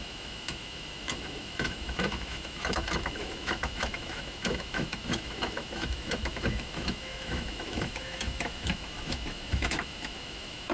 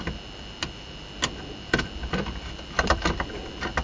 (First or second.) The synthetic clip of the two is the first